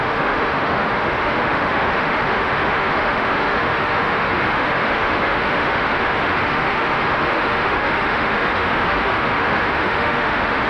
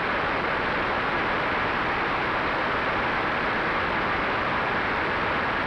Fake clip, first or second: first